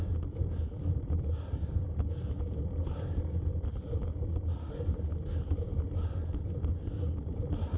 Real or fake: real